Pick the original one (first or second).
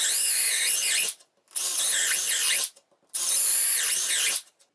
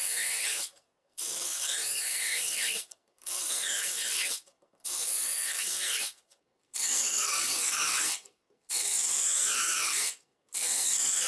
first